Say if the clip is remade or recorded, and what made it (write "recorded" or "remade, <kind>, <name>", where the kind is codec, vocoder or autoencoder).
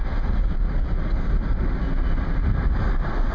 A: recorded